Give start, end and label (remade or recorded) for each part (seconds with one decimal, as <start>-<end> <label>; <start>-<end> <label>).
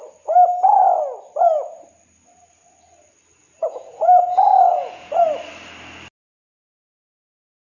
0.0-3.6 recorded; 3.6-5.1 remade; 5.1-7.6 recorded